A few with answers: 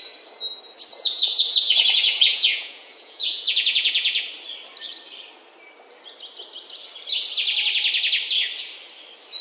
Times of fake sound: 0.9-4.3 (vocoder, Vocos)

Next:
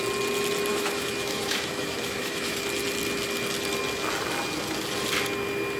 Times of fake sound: 0.7-2.6 (autoencoder, DAC-VAE)

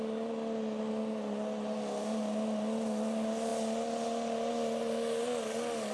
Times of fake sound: none